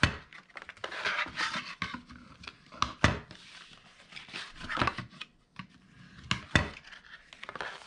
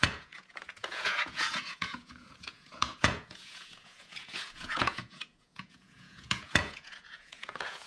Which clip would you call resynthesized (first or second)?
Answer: second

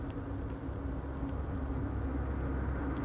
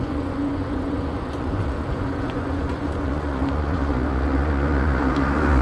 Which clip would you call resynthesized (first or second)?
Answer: second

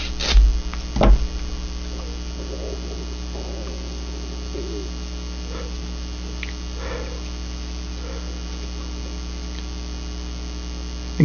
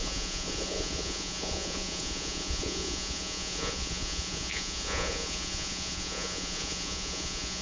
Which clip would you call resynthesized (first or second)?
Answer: second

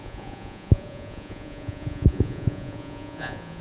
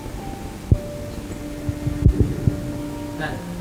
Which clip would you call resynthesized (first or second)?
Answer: first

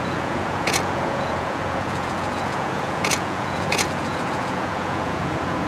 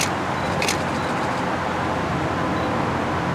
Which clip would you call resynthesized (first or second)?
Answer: first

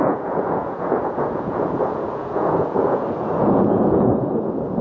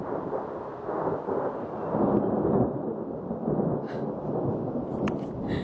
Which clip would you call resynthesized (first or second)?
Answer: first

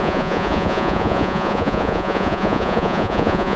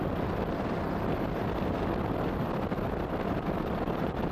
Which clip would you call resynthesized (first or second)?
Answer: first